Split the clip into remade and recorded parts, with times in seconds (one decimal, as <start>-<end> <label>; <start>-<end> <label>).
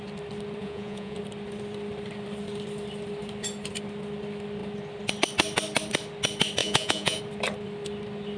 0.0-0.6 recorded; 0.6-1.2 remade; 1.2-6.6 recorded; 6.6-7.2 remade; 7.2-8.4 recorded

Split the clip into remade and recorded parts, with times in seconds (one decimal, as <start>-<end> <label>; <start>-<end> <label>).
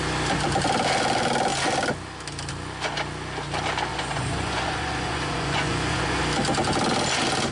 0.0-3.9 recorded; 3.9-6.2 remade; 6.2-7.5 recorded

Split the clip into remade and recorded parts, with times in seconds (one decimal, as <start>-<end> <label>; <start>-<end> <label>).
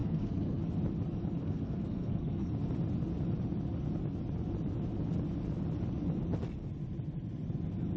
0.0-0.6 remade; 0.6-1.4 recorded; 1.4-2.5 remade; 2.5-8.0 recorded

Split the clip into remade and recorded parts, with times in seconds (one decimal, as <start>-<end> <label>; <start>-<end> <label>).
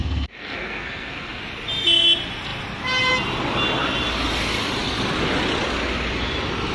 0.0-1.4 remade; 1.4-6.7 recorded